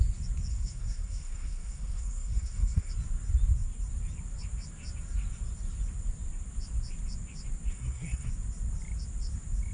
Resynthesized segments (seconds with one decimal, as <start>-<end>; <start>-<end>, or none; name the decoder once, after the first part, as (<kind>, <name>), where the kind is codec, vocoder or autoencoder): 0.5-2.9 (codec, SNAC); 7.7-8.3